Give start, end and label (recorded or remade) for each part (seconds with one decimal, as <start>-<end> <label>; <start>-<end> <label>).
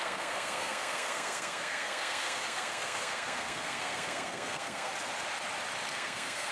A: 0.0-4.9 remade; 4.9-5.9 recorded; 5.9-6.5 remade